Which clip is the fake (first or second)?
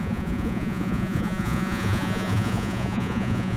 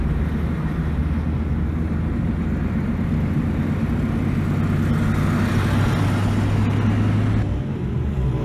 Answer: first